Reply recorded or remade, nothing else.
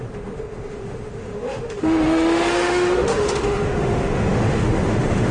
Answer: remade